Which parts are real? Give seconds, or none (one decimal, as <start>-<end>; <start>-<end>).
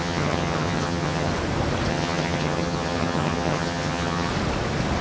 1.3-1.9; 4.3-5.0